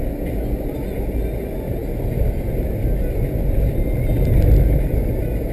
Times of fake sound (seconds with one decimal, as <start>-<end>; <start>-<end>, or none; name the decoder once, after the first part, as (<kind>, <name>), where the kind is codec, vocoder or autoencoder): none

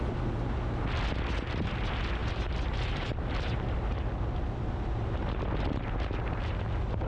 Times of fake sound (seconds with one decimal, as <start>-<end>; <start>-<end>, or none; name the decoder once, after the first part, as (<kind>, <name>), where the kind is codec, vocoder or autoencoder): 2.2-5.0 (vocoder, BigVGAN v2)

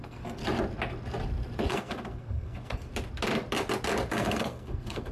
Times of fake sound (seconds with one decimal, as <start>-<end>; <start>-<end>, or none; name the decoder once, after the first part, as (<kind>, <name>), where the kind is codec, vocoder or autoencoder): 0.0-0.4 (codec, SNAC); 1.7-2.9; 4.1-5.1